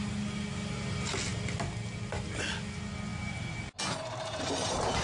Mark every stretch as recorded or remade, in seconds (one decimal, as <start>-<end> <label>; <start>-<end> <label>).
0.0-5.0 recorded